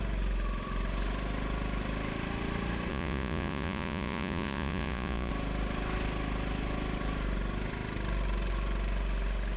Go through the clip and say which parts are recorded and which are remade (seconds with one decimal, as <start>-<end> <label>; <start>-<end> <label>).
0.0-2.9 recorded; 2.9-5.3 remade; 5.3-9.6 recorded